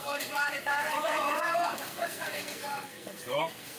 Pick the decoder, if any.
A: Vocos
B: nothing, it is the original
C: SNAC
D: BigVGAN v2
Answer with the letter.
C